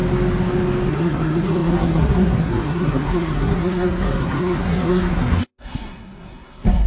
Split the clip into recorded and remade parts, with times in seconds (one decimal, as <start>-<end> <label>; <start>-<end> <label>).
0.0-0.9 recorded; 0.9-6.9 remade